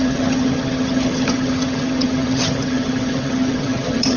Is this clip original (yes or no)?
no